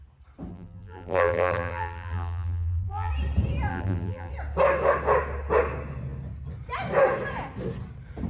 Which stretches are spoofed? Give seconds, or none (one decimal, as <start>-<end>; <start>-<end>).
0.5-3.1; 3.7-4.3